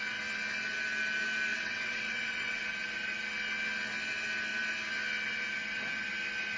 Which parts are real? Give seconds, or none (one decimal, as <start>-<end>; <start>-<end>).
0.0-1.5; 2.6-6.6